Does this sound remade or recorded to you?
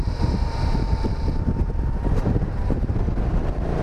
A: remade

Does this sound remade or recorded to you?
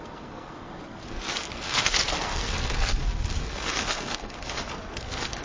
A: remade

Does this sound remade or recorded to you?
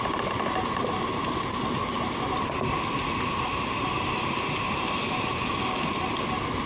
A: recorded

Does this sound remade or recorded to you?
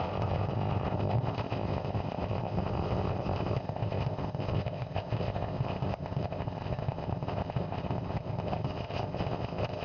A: remade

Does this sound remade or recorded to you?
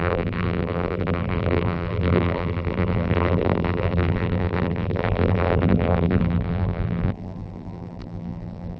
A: remade